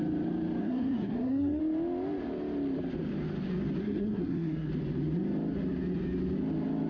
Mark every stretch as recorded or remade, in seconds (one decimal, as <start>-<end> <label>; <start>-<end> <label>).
0.0-0.6 recorded; 0.6-1.6 remade; 1.6-3.8 recorded; 3.8-4.7 remade; 4.7-6.9 recorded